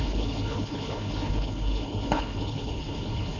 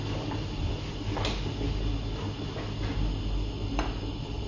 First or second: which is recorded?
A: second